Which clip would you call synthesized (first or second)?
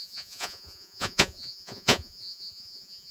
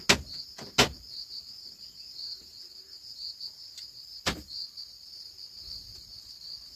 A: first